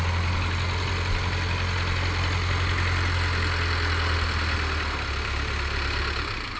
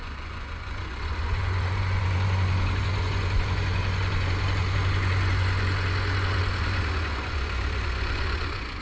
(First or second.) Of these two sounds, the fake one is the second